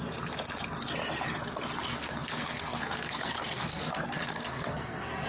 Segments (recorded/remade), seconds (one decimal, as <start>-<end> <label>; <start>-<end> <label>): 0.0-1.9 recorded; 1.9-5.3 remade